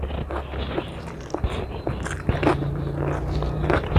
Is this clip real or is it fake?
real